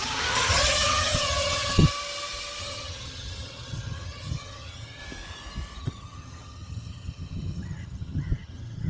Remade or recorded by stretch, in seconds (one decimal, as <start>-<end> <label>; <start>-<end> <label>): 0.0-1.9 remade; 1.9-2.6 recorded; 2.6-5.0 remade; 5.0-5.8 recorded; 5.8-8.9 remade